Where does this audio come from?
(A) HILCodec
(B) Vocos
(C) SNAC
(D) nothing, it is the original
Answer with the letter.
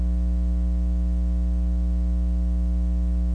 D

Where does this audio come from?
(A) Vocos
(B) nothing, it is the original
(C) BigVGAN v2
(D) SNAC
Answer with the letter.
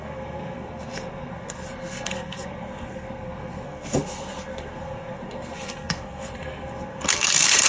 D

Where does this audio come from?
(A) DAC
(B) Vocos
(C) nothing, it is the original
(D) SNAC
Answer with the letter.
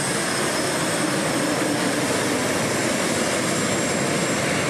C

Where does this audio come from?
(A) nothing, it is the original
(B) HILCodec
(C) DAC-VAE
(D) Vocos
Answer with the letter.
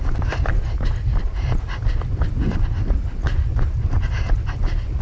A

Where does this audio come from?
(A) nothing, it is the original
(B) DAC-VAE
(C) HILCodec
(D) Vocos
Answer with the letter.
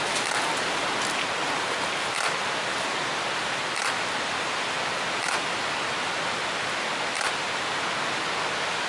A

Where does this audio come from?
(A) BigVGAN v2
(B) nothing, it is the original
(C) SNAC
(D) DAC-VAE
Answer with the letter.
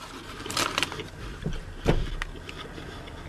B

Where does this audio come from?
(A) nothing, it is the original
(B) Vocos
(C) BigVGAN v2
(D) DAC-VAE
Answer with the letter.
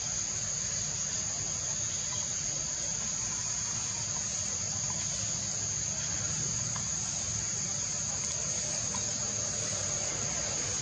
A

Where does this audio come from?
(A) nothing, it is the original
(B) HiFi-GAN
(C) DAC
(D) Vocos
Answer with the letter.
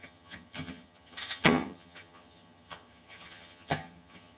B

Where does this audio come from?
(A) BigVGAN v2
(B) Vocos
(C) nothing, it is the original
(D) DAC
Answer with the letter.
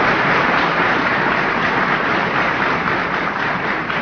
A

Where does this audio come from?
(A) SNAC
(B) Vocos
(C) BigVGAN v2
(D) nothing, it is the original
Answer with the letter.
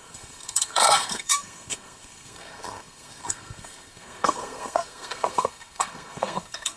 A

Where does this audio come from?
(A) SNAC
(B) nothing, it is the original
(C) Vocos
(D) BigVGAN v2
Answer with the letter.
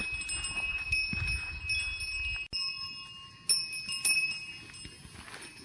B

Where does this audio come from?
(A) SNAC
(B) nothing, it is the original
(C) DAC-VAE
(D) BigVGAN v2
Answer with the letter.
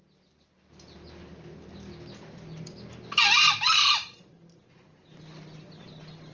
B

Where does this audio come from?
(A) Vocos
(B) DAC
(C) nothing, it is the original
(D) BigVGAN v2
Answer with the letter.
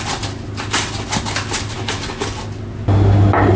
C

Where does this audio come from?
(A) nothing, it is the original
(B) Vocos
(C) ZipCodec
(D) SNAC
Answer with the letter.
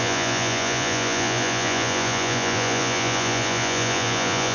B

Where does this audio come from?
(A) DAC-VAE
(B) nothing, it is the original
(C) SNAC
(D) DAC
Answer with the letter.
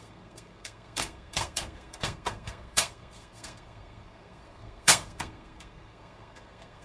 C